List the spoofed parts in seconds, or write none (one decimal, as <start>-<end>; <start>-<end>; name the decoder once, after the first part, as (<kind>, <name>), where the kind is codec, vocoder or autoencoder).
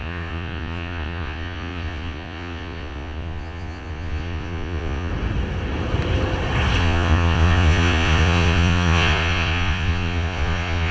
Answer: 0.0-5.1 (vocoder, Vocos); 6.8-10.9